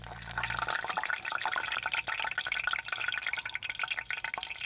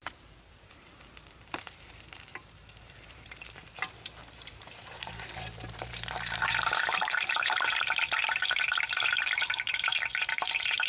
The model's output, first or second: second